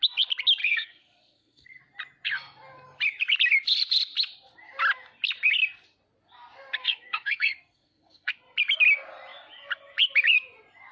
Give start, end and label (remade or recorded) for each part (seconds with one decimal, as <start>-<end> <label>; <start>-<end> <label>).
0.0-0.6 recorded; 0.6-1.8 remade; 1.8-6.8 recorded; 6.8-8.3 remade; 8.3-10.9 recorded

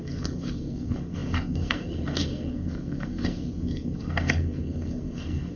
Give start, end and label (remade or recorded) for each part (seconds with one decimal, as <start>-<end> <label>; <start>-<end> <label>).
0.0-5.6 remade

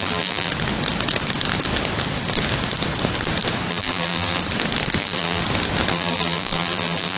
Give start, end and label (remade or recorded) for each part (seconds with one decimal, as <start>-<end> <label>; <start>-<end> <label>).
0.0-0.5 remade; 0.5-3.7 recorded; 3.7-4.4 remade; 4.4-5.0 recorded; 5.0-5.4 remade; 5.4-5.9 recorded; 5.9-7.2 remade

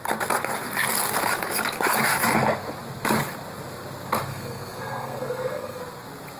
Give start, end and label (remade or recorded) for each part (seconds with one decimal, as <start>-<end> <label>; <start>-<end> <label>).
0.0-4.3 recorded; 4.3-5.8 remade; 5.8-6.4 recorded

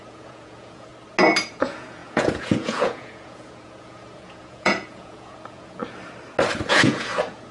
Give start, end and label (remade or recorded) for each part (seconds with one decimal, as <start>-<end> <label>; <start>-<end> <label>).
0.0-0.9 remade; 0.9-1.5 recorded; 1.5-5.8 remade; 5.8-6.7 recorded; 6.7-7.5 remade